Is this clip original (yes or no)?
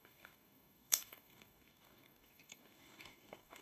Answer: no